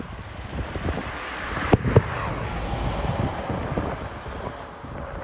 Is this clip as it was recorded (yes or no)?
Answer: no